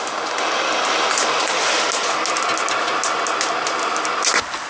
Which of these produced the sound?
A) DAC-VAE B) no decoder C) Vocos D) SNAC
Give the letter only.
B